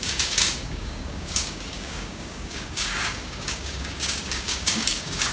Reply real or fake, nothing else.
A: fake